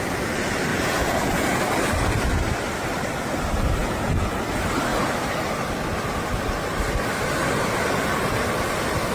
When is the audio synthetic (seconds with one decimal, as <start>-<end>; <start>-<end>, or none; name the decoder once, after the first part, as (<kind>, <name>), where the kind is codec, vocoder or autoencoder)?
0.7-1.6 (vocoder, Vocos); 3.8-4.4